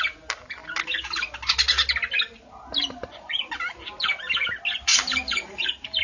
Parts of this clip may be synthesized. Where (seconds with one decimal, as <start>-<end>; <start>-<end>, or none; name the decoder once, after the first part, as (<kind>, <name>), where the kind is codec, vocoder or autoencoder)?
4.9-6.0 (vocoder, BigVGAN v2)